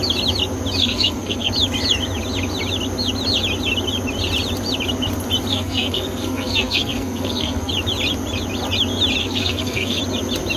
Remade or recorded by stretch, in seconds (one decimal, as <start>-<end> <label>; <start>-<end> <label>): 0.0-0.8 recorded; 0.8-1.5 remade; 1.5-5.5 recorded; 5.5-7.7 remade; 7.7-9.2 recorded; 9.2-10.0 remade; 10.0-10.6 recorded